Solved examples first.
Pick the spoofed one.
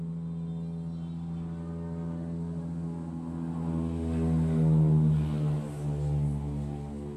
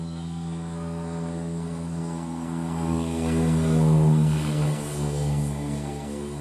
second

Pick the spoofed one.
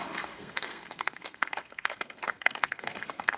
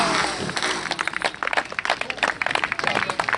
first